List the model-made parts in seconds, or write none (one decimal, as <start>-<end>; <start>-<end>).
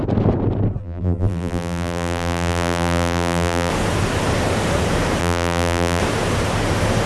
0.8-3.7; 5.2-6.0